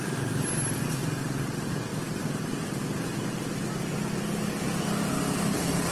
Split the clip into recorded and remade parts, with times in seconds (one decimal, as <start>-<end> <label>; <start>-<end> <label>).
0.0-5.9 recorded